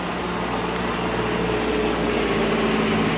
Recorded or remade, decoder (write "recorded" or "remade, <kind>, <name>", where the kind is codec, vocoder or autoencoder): recorded